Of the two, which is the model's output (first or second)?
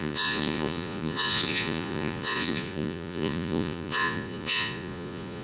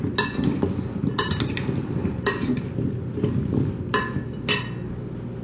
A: first